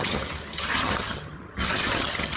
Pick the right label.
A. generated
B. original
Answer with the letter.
A